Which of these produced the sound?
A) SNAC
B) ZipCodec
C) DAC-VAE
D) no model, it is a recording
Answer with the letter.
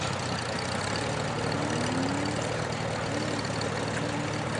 D